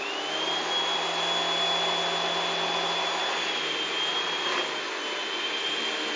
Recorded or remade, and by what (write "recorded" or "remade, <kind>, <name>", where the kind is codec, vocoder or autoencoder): recorded